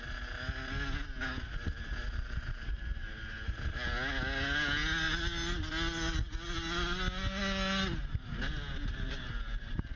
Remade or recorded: recorded